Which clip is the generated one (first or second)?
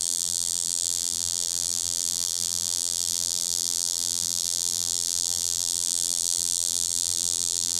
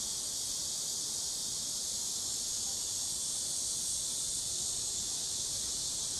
first